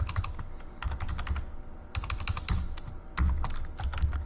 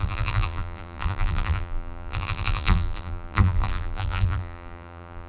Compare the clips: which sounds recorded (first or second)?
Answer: first